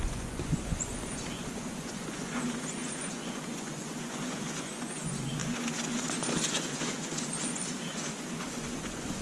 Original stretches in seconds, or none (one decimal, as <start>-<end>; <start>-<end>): none